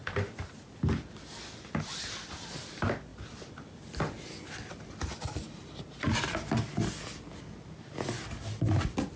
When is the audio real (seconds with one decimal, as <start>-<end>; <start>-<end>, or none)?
0.0-9.2